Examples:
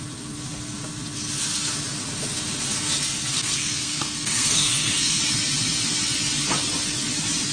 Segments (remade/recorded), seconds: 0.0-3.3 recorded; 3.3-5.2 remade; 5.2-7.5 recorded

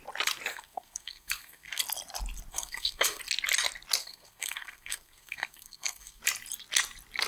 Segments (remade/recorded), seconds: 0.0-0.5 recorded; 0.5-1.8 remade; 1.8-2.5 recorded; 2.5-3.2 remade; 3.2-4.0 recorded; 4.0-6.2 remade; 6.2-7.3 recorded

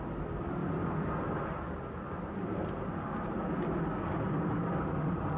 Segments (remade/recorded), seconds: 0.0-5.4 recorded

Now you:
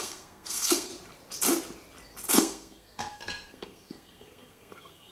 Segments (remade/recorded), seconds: 0.0-0.9 remade; 0.9-2.3 recorded; 2.3-5.1 remade

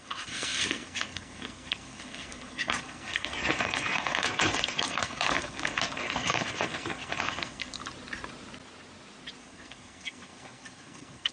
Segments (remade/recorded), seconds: 0.0-7.8 remade; 7.8-9.4 recorded; 9.4-11.3 remade